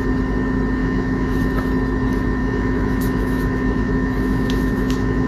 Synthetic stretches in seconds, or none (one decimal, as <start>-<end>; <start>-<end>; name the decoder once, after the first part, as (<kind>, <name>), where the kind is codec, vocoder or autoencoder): 0.8-1.4 (autoencoder, DAC-VAE); 2.4-5.3